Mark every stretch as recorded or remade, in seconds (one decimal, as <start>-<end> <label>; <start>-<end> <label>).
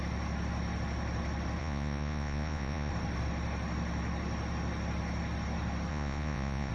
0.0-1.6 recorded; 1.6-2.9 remade; 2.9-5.9 recorded; 5.9-6.7 remade